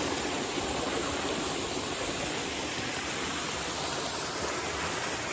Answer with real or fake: real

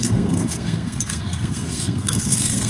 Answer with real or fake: fake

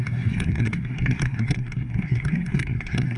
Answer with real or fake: fake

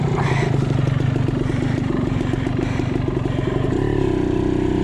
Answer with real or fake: real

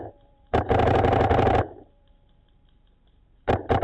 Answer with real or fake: fake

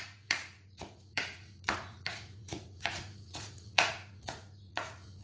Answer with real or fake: fake